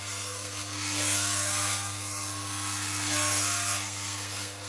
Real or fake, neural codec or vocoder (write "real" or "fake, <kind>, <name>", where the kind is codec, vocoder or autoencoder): fake, codec, SNAC